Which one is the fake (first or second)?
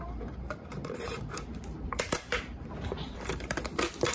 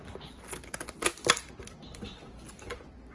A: first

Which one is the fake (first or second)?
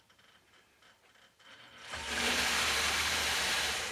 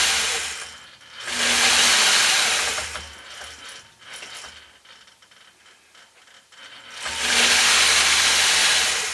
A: first